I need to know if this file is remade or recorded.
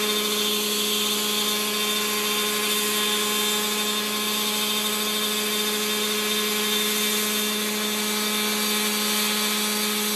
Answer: recorded